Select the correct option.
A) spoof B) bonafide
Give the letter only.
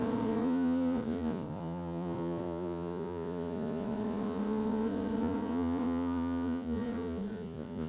A